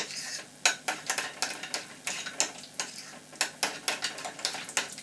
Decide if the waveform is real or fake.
real